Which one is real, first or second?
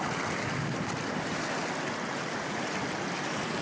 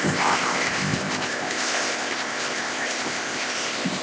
first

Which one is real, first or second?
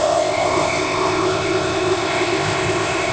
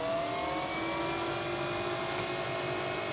second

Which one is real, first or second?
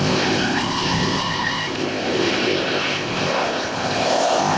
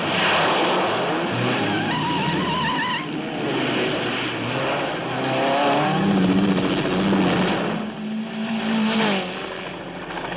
second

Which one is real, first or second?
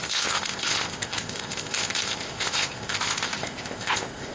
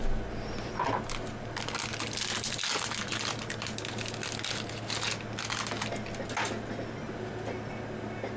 second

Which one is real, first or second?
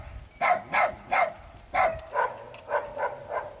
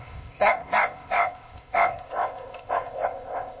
first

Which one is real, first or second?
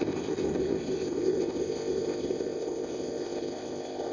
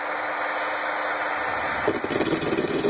second